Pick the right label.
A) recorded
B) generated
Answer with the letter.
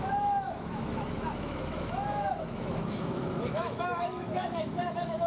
B